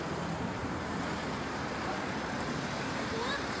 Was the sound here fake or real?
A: fake